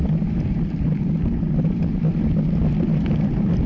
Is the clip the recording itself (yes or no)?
yes